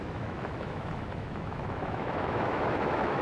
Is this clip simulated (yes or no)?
yes